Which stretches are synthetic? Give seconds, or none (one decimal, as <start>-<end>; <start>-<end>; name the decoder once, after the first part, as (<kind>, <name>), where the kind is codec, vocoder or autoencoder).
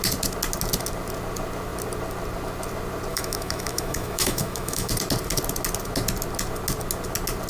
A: 3.1-4.9 (autoencoder, DAC-VAE)